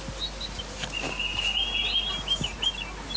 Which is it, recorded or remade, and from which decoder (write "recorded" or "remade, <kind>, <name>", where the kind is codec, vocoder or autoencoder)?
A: recorded